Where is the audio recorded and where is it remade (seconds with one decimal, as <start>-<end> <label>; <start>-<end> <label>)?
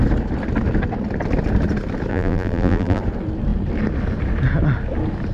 0.0-2.1 recorded; 2.1-3.0 remade; 3.0-5.3 recorded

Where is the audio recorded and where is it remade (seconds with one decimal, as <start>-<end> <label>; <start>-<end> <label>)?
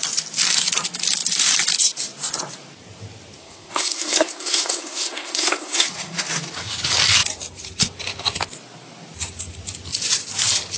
0.0-3.4 recorded; 3.4-6.3 remade; 6.3-10.8 recorded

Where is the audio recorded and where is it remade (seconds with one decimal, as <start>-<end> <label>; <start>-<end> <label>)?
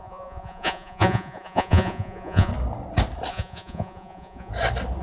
0.0-2.5 remade; 2.5-3.3 recorded; 3.3-4.5 remade; 4.5-5.0 recorded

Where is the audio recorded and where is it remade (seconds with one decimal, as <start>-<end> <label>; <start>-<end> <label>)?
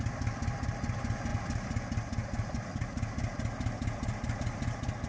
0.0-5.1 recorded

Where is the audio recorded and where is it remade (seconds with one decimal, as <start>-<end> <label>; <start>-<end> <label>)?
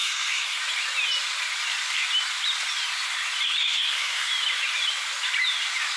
0.0-0.6 remade; 0.6-3.6 recorded; 3.6-4.3 remade; 4.3-6.0 recorded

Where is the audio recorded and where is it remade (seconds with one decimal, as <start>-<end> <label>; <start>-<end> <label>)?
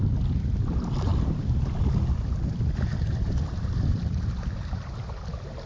0.0-5.7 recorded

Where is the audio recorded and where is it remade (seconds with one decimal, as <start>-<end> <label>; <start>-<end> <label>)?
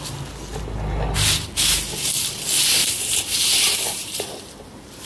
0.0-2.8 recorded; 2.8-5.1 remade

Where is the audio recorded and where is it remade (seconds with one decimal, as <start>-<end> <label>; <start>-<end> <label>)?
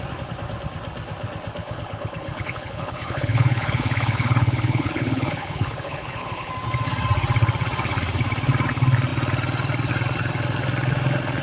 0.0-1.6 recorded; 1.6-6.5 remade; 6.5-11.4 recorded